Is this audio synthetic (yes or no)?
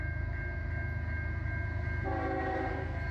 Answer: no